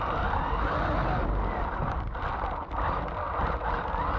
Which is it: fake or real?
real